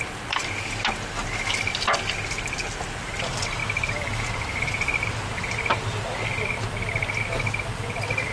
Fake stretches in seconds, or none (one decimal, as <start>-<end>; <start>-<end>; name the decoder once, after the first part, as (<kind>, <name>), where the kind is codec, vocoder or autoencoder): none